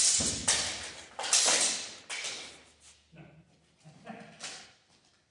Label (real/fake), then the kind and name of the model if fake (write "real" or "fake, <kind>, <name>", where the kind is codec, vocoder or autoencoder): real